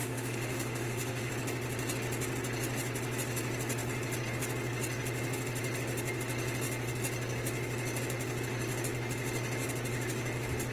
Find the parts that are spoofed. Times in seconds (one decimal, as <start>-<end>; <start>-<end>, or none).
0.0-1.3